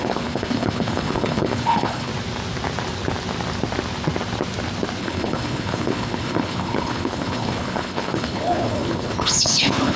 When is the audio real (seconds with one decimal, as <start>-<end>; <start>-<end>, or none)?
2.1-5.0